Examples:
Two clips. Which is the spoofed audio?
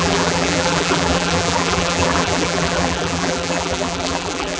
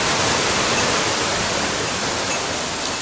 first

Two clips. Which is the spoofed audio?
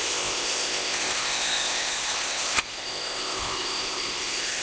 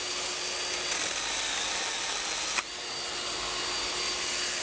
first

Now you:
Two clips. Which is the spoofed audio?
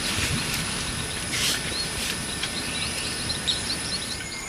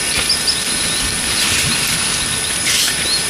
first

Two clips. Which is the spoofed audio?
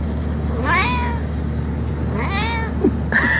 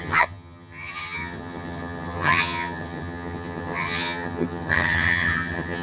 second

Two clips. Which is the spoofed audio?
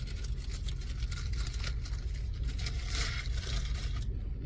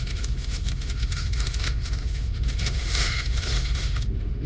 second